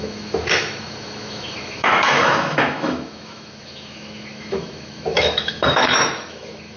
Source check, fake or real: fake